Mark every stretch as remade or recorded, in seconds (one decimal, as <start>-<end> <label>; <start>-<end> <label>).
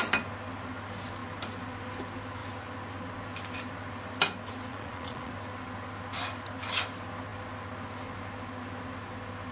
0.0-4.7 recorded; 4.7-5.3 remade; 5.3-9.5 recorded